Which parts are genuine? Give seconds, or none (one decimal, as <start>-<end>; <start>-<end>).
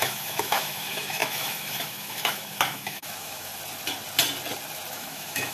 3.5-4.9